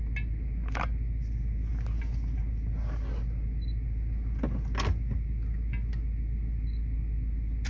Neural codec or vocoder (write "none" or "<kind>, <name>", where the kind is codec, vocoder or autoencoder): none